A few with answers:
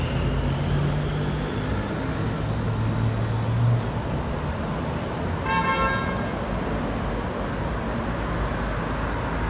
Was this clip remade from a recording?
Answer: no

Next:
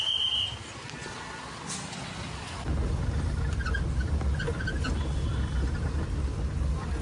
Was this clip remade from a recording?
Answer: no